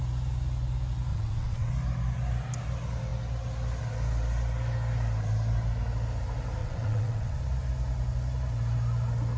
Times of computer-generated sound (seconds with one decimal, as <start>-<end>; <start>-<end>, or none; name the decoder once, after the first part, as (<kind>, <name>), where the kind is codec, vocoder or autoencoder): 1.1-1.7 (vocoder, WaveNeXt); 6.6-7.4